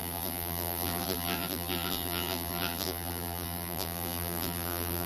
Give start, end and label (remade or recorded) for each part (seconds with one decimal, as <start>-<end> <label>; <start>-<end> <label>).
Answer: 0.0-5.1 remade